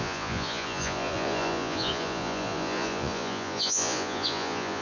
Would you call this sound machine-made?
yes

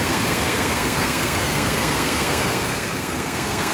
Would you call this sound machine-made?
yes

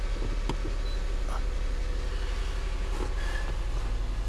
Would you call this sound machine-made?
no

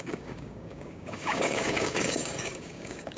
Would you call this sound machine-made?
yes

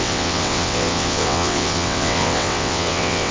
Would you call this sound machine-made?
yes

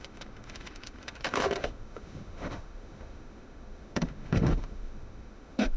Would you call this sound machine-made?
yes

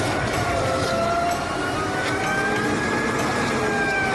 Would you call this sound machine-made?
no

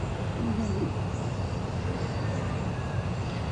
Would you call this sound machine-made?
no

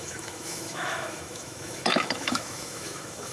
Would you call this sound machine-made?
yes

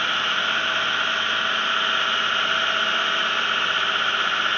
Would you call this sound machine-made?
no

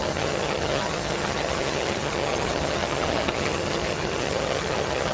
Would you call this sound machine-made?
yes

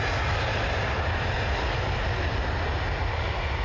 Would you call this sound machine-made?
no